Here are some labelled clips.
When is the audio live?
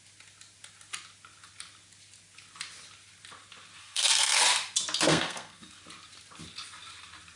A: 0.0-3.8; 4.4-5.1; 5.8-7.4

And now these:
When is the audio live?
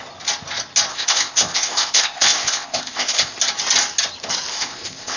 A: 0.0-0.9; 3.4-4.5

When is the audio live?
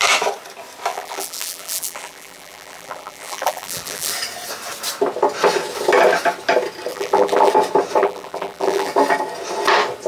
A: 0.0-0.9; 4.1-6.9; 7.5-8.0; 8.9-10.1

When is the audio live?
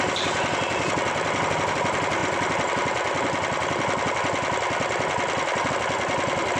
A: 0.0-6.6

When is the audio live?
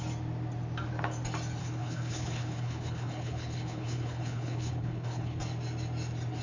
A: 0.0-1.6; 5.4-6.4